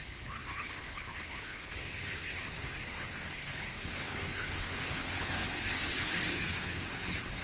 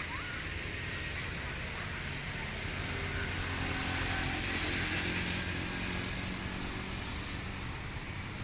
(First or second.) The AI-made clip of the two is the first